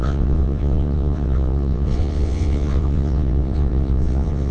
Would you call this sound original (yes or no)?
no